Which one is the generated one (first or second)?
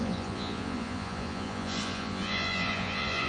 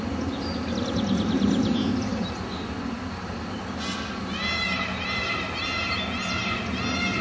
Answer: first